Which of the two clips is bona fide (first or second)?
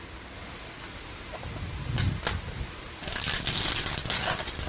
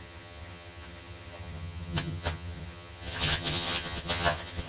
first